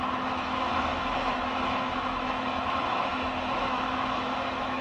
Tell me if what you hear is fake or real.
fake